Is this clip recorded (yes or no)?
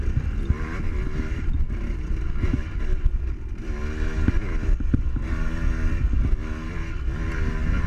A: yes